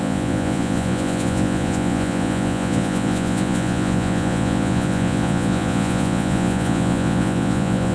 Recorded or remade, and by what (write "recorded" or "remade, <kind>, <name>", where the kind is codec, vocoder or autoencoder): remade, vocoder, Vocos